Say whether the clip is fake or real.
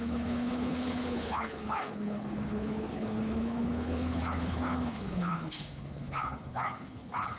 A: fake